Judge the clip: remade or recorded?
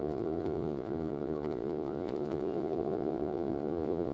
remade